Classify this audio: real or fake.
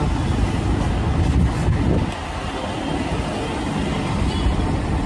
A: real